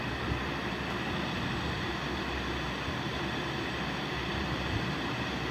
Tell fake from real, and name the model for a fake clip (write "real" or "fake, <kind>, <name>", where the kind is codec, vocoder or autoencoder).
fake, vocoder, BigVGAN v2